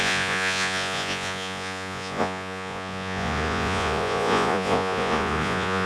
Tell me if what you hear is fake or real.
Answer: fake